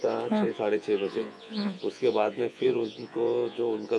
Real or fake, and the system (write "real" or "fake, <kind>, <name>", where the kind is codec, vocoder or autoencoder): fake, vocoder, Vocos